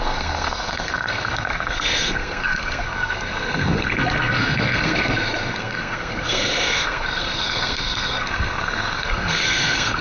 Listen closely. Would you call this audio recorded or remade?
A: remade